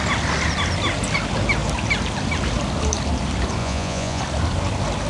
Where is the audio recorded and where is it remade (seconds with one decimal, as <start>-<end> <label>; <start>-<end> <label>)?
0.0-3.6 recorded; 3.6-4.2 remade; 4.2-5.1 recorded